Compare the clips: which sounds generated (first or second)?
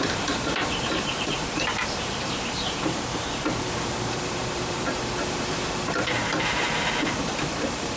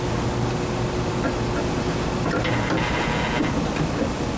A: first